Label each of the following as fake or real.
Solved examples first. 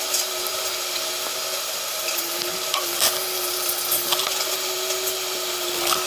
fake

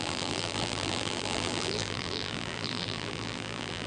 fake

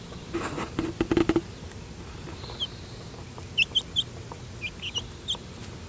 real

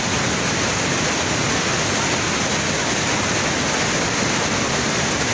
real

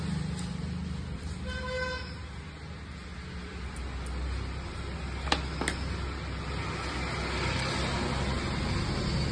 real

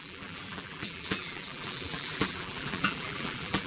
fake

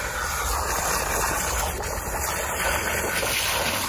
real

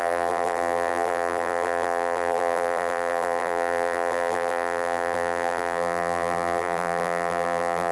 fake